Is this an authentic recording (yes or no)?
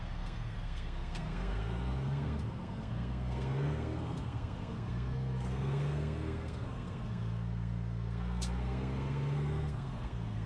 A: no